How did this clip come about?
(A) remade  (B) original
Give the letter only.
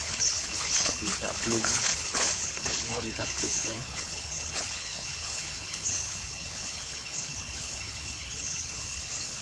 A